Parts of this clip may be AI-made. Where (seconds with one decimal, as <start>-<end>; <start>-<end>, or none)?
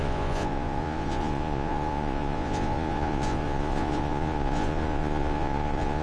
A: 0.0-6.0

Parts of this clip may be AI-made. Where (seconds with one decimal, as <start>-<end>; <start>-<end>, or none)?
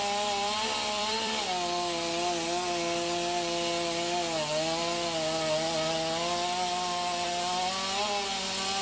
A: 0.0-1.3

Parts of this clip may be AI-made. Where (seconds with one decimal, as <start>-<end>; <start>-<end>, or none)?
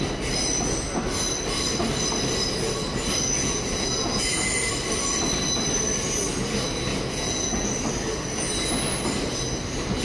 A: 3.4-4.4; 6.9-7.7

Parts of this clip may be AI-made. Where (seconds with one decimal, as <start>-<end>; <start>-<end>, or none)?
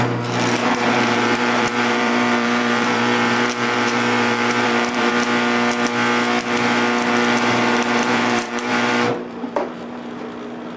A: 0.6-5.1; 8.0-10.2